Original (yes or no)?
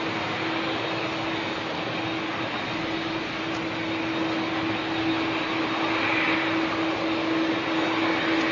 yes